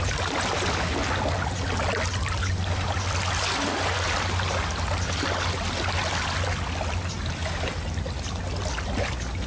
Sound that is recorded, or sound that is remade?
recorded